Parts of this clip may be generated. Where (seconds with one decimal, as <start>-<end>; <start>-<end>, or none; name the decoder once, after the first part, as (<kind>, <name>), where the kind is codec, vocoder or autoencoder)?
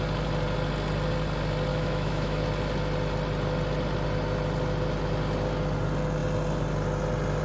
1.7-2.4 (autoencoder, DAC-VAE)